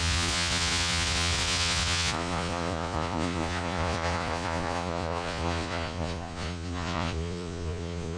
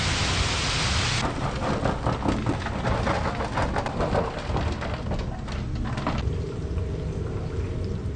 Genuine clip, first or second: second